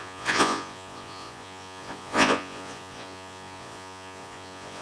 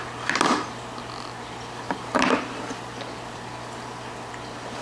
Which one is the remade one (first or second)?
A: first